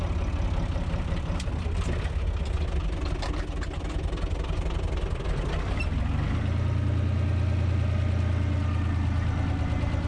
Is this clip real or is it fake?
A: real